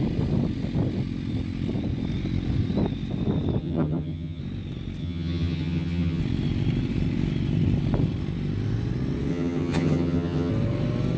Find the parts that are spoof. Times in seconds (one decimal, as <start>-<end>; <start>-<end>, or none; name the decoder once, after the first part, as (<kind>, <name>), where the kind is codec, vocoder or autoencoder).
3.6-4.4 (vocoder, HiFi-GAN); 5.0-6.2; 9.3-10.5